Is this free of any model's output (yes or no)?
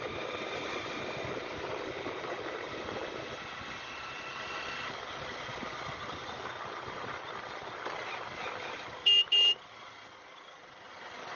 yes